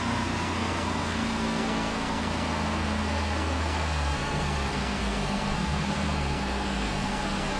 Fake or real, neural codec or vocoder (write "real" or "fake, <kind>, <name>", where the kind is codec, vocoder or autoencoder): fake, codec, SNAC